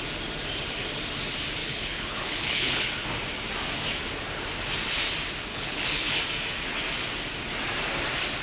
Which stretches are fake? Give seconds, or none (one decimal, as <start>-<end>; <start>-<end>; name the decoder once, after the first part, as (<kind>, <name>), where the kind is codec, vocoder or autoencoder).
1.6-2.9 (codec, HILCodec); 5.5-6.2